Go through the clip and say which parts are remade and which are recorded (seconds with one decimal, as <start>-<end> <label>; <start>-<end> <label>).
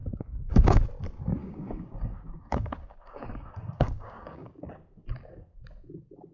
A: 0.0-0.8 remade; 0.8-1.4 recorded; 1.4-4.5 remade; 4.5-6.3 recorded